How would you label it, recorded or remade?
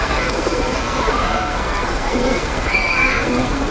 remade